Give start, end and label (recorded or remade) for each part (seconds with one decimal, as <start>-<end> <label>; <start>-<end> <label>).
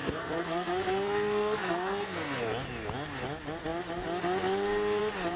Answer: 0.0-2.4 remade; 2.4-5.4 recorded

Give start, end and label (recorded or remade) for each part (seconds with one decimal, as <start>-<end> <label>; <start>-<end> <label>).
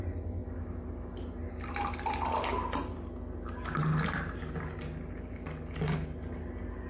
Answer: 0.0-6.9 recorded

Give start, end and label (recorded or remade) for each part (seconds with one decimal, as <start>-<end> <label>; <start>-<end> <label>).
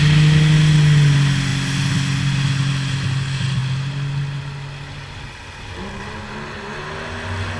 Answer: 0.0-7.6 recorded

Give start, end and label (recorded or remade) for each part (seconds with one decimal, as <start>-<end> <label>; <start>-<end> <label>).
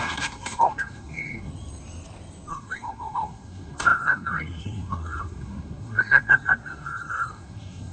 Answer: 0.0-1.5 remade; 1.5-2.5 recorded; 2.5-7.9 remade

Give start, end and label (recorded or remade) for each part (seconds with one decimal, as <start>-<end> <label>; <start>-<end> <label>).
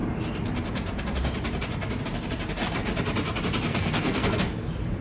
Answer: 0.0-3.7 recorded; 3.7-4.4 remade; 4.4-5.0 recorded